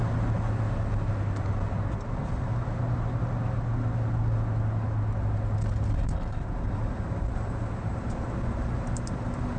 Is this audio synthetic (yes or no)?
no